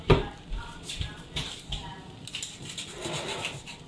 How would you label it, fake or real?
real